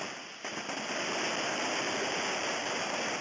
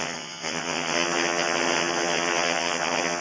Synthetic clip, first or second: second